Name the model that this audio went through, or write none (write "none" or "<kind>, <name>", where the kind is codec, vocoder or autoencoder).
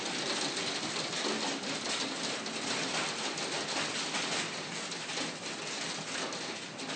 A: none